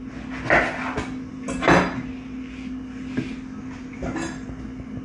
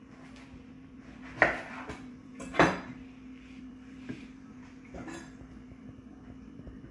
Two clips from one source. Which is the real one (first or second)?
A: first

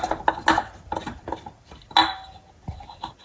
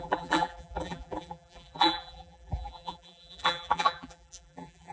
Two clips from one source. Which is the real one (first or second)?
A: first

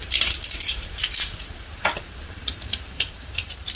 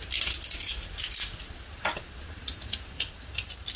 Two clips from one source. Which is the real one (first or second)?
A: second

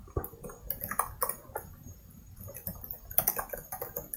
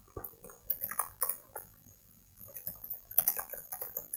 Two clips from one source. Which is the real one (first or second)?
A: first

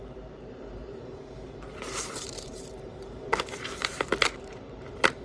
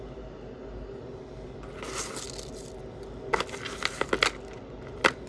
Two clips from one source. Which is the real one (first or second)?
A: second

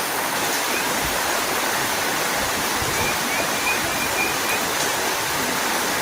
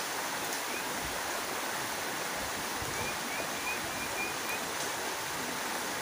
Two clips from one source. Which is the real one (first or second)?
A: second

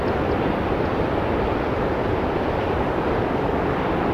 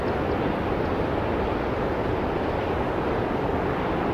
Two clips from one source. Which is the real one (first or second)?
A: second